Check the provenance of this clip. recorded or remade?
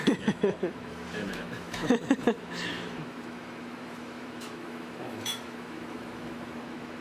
remade